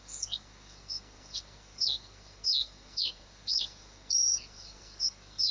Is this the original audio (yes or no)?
no